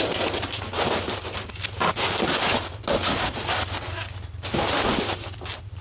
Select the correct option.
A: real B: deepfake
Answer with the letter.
A